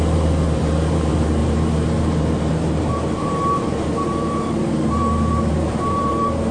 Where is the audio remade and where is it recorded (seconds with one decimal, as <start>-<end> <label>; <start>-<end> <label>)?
0.0-6.5 remade